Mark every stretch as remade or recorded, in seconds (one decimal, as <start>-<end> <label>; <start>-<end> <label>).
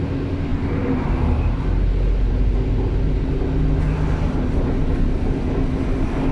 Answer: 0.0-6.3 recorded